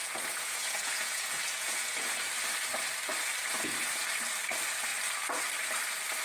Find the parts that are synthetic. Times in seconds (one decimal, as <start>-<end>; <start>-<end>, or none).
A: 0.0-2.2; 3.4-4.0